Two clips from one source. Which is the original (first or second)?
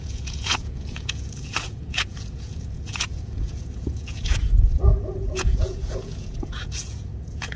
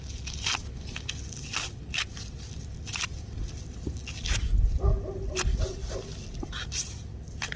second